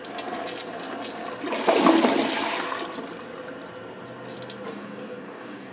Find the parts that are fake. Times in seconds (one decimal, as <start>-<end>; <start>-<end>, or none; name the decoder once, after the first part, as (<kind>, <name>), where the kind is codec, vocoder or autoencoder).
4.7-5.7 (codec, DAC)